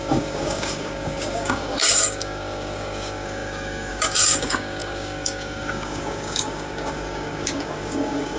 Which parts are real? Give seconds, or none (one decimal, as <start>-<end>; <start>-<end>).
none